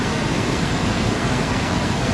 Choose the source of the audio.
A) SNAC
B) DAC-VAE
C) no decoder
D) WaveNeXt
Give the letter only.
A